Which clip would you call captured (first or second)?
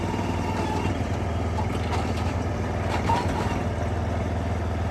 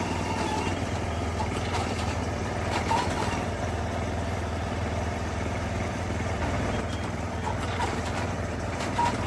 first